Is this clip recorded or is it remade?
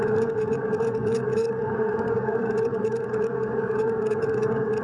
remade